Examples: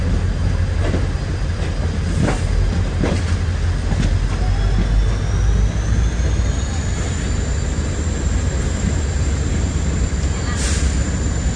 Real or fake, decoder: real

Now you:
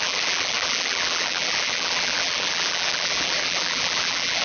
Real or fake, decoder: fake, vocoder, BigVGAN v2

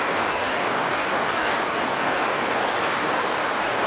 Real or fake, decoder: fake, codec, DAC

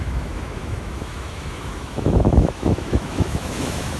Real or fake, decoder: fake, autoencoder, DAC-VAE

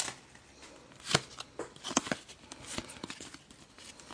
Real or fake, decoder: real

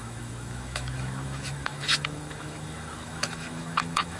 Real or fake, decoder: fake, autoencoder, DAC-VAE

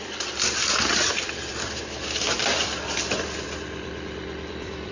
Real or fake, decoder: fake, vocoder, BigVGAN v2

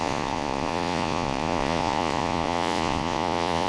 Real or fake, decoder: fake, vocoder, Vocos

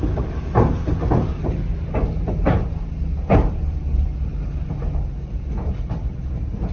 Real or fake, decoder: real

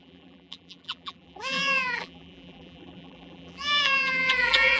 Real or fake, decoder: fake, vocoder, BigVGAN v2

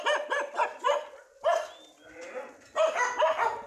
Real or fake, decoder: real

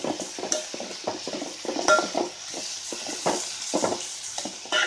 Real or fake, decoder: real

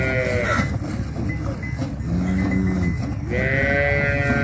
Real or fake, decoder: real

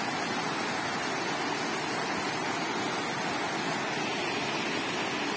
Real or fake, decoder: real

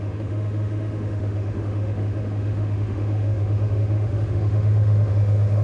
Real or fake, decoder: fake, autoencoder, DAC-VAE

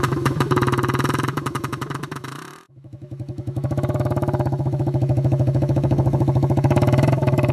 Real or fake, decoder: fake, autoencoder, DAC-VAE